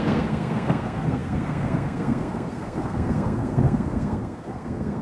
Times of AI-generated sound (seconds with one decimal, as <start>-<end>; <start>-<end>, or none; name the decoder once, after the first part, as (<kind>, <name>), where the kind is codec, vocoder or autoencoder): 0.0-5.0 (codec, SNAC)